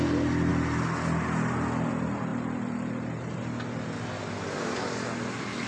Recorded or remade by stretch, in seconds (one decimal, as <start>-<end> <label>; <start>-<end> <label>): 0.0-5.7 recorded